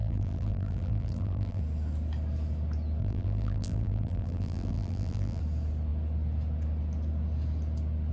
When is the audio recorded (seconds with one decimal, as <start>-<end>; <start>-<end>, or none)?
1.6-3.0; 5.4-8.1